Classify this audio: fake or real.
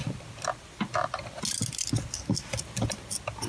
real